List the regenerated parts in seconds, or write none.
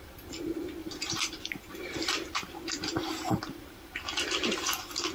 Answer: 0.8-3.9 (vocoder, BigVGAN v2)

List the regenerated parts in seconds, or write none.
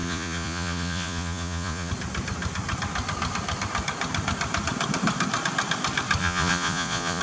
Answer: 0.0-1.9 (vocoder, Vocos); 6.2-7.2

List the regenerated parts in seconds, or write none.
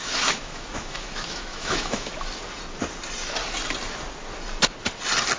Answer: 0.0-2.1 (autoencoder, DAC-VAE)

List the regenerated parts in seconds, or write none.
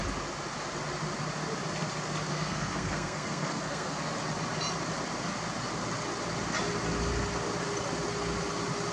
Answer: 2.3-4.0 (codec, SNAC)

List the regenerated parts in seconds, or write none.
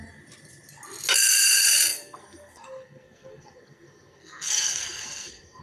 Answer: 1.9-5.6 (codec, SNAC)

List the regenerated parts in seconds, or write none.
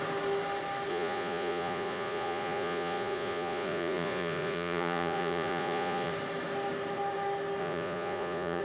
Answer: 0.9-6.1 (vocoder, Vocos); 7.6-8.6